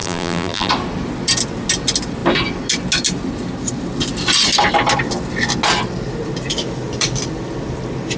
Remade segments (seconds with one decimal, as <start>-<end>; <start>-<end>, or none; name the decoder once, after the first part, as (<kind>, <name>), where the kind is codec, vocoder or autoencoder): 0.0-0.7 (vocoder, BigVGAN v2)